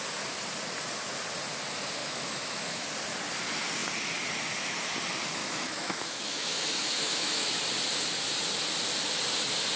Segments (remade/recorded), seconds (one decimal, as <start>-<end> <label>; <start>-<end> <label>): 0.0-2.0 recorded; 2.0-2.9 remade; 2.9-5.4 recorded; 5.4-7.6 remade; 7.6-9.8 recorded